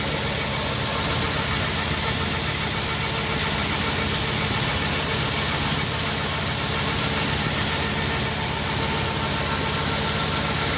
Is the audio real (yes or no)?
yes